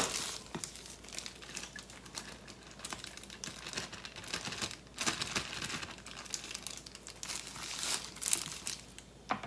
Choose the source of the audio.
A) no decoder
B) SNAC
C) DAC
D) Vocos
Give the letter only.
A